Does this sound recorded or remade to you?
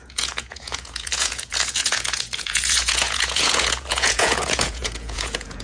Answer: remade